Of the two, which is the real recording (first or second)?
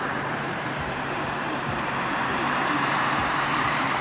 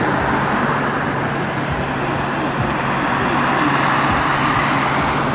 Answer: second